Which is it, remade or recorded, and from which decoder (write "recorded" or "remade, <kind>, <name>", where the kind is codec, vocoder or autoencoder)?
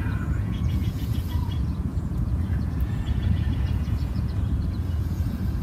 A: remade, vocoder, Vocos